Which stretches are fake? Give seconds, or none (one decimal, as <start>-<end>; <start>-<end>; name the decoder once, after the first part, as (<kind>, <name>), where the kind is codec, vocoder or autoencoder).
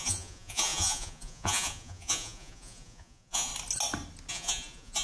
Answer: 0.0-3.5 (vocoder, Vocos); 4.3-5.0